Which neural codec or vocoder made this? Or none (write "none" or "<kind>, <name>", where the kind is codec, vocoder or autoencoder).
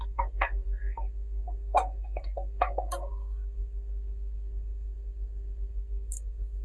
codec, SNAC